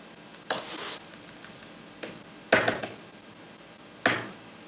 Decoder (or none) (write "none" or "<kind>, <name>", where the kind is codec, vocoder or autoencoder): none